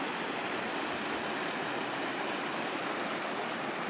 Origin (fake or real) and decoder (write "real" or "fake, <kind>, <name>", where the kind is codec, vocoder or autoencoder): real